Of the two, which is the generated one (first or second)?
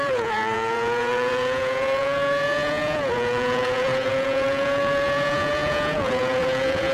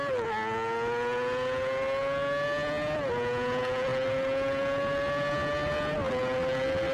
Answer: first